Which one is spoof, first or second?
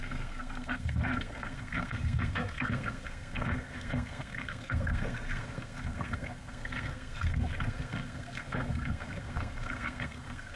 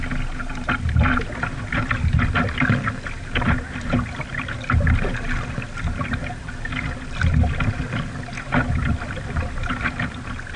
first